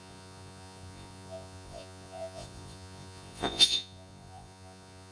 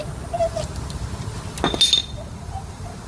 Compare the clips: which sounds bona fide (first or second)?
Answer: second